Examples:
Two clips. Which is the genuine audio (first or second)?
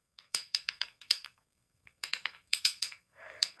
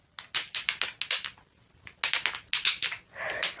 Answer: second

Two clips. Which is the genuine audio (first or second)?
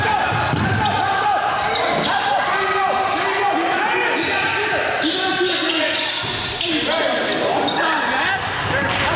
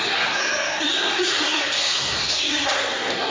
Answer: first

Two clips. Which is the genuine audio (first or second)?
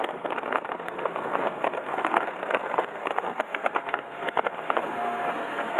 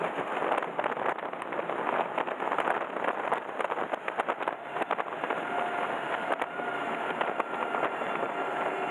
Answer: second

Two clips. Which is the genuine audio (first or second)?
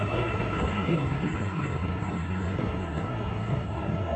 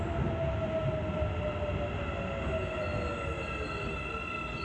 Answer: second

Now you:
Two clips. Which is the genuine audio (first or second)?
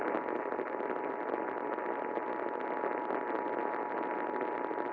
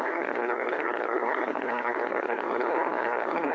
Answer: first